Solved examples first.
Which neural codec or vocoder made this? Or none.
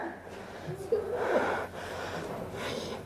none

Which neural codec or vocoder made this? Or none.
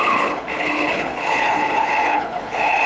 codec, HILCodec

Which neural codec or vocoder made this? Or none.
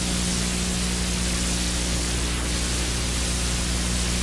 none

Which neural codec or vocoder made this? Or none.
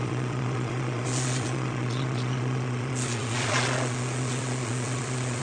vocoder, Vocos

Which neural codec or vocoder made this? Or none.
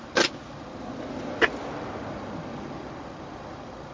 none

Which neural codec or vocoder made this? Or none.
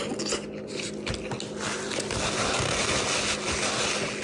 none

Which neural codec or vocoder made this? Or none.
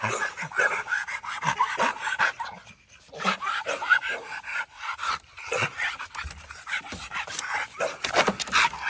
none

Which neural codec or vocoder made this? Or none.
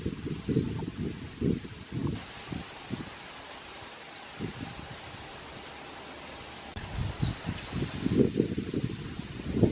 vocoder, BigVGAN v2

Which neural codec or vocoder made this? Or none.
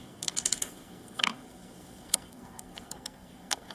codec, SNAC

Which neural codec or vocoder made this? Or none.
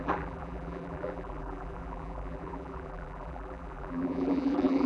vocoder, BigVGAN v2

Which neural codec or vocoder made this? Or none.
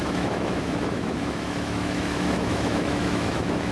autoencoder, DAC-VAE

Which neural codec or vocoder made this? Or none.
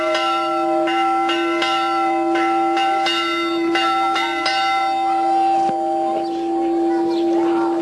none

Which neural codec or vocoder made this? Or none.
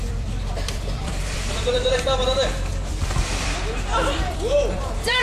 vocoder, BigVGAN v2